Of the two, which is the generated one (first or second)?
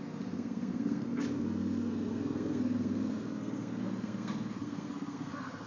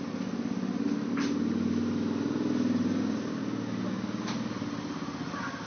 first